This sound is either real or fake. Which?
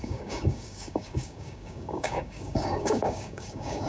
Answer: fake